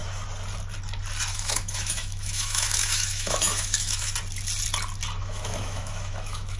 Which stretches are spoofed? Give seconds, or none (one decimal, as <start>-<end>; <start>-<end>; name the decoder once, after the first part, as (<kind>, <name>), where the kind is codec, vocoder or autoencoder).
1.3-4.1 (autoencoder, DAC-VAE); 5.2-6.6